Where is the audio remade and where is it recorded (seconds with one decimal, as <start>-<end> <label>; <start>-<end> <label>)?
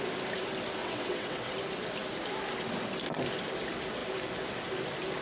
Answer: 0.0-0.8 recorded; 0.8-1.5 remade; 1.5-5.2 recorded